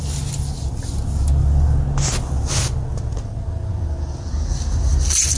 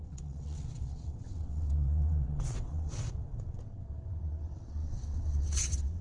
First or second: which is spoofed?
second